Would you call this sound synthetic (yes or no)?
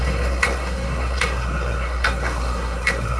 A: yes